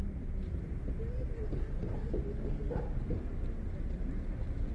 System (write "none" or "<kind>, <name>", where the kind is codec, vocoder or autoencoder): none